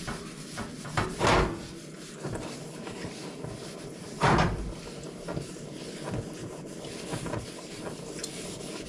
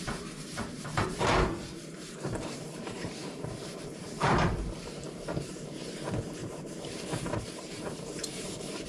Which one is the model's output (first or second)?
second